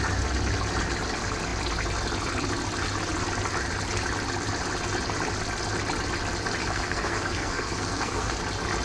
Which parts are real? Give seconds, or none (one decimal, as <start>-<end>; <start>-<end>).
0.0-6.6; 8.4-8.8